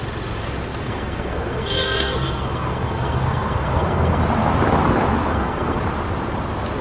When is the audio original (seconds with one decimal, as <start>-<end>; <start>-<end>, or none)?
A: 0.0-0.8; 4.2-5.3; 5.8-6.8